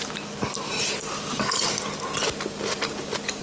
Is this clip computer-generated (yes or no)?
no